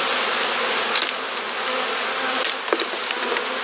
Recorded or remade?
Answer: recorded